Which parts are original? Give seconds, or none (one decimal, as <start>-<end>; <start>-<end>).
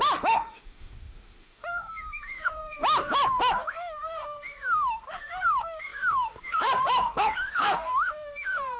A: none